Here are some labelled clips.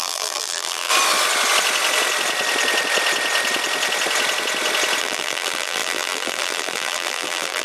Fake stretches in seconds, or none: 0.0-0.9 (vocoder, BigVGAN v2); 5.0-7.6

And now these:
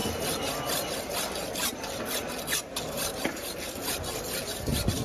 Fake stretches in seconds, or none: 2.9-5.0 (vocoder, BigVGAN v2)

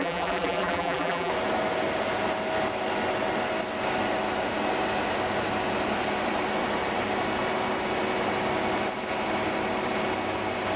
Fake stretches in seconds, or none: 0.0-1.3 (vocoder, BigVGAN v2)

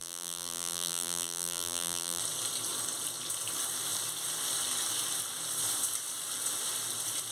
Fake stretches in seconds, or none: 0.0-2.2 (vocoder, BigVGAN v2)

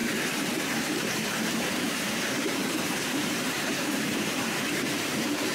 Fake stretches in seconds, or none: 1.0-5.5 (vocoder, BigVGAN v2)

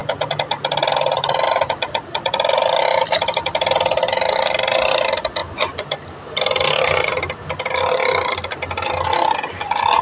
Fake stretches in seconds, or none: none

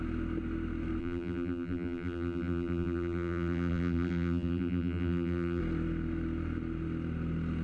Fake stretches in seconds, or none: 1.0-5.6 (vocoder, BigVGAN v2)